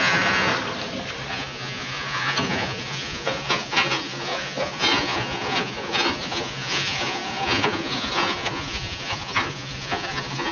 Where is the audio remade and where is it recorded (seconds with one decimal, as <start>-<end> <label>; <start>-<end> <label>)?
0.0-0.5 remade; 0.5-1.3 recorded; 1.3-10.5 remade